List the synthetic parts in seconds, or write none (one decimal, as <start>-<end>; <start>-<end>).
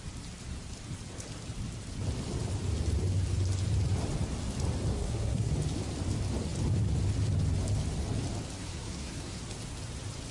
4.9-5.5; 8.6-9.4